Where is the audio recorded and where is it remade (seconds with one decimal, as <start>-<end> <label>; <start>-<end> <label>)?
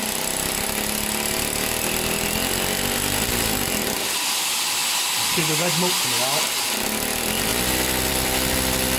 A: 0.0-9.0 recorded